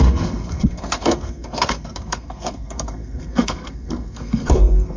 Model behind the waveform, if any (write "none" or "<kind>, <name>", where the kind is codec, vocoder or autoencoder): codec, SNAC